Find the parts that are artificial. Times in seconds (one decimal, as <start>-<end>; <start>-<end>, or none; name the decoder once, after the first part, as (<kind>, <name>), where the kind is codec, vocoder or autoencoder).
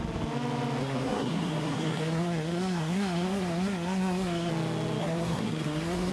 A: 0.8-4.5 (codec, SNAC); 5.0-6.1